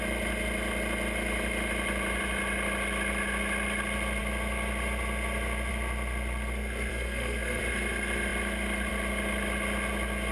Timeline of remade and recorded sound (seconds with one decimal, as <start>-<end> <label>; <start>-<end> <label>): 0.0-6.9 recorded; 6.9-7.6 remade; 7.6-10.3 recorded